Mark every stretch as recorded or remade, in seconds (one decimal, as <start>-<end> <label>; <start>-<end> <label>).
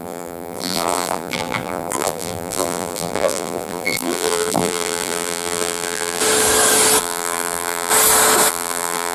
0.0-6.2 remade; 6.2-7.0 recorded; 7.0-7.9 remade; 7.9-8.5 recorded; 8.5-9.1 remade